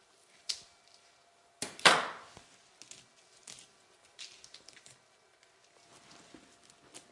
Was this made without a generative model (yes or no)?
yes